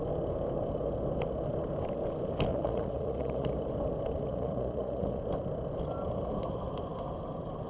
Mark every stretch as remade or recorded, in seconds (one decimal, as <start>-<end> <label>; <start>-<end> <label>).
0.0-2.5 recorded; 2.5-3.5 remade; 3.5-4.3 recorded; 4.3-5.2 remade; 5.2-7.7 recorded